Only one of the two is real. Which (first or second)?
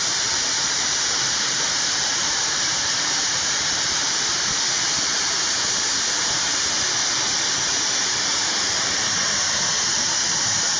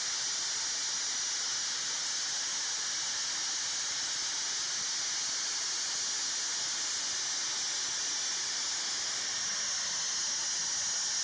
second